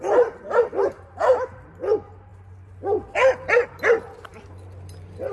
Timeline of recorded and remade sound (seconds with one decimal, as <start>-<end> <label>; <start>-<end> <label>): 0.0-5.3 recorded